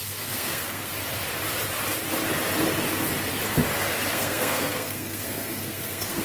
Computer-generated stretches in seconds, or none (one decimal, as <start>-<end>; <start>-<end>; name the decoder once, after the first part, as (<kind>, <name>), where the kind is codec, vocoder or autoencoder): 0.0-0.9 (codec, SNAC); 4.1-6.2